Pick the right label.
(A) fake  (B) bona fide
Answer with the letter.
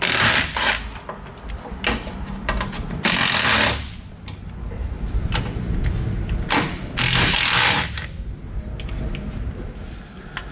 B